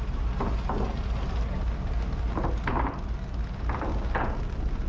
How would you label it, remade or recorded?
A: recorded